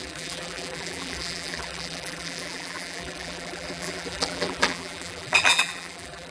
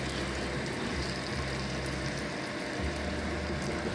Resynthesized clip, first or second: first